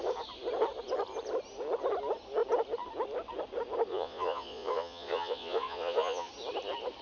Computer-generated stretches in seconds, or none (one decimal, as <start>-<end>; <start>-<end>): 3.9-6.3

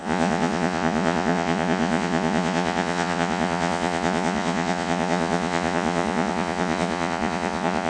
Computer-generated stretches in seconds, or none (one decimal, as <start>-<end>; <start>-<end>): 0.0-7.9

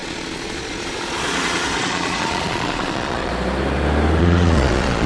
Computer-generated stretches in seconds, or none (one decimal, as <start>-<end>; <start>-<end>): 0.0-3.3; 4.2-5.1

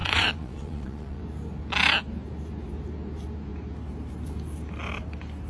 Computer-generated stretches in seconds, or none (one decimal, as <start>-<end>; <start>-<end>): 0.0-1.2

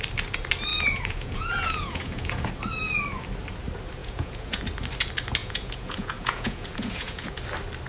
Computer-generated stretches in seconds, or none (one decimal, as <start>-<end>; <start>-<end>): 0.7-2.5; 4.0-4.6; 5.4-7.3